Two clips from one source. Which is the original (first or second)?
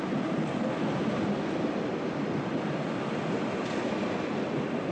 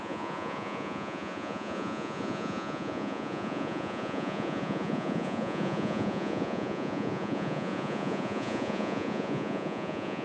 first